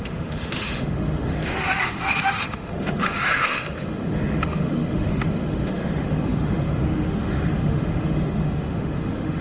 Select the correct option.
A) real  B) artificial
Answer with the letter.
B